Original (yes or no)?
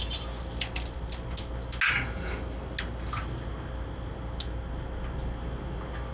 yes